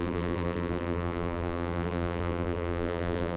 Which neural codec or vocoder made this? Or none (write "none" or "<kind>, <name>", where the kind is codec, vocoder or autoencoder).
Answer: vocoder, BigVGAN v2